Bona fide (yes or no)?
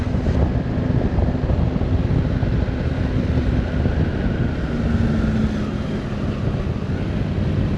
yes